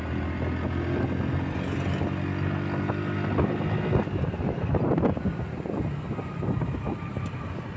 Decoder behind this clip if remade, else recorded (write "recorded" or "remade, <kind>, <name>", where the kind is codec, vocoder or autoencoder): recorded